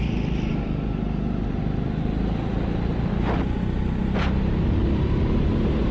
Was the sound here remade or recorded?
recorded